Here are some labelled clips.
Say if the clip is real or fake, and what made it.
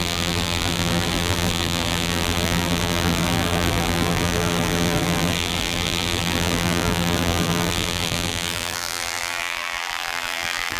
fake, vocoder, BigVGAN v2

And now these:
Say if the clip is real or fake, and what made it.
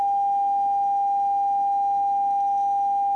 real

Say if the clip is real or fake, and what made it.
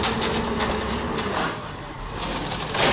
real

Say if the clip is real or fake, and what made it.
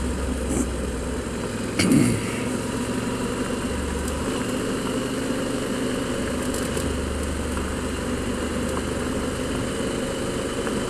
real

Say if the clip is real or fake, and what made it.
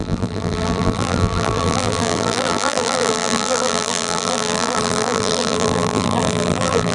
fake, vocoder, BigVGAN v2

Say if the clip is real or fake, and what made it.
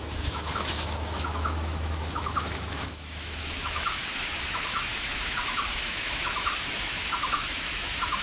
fake, autoencoder, DAC-VAE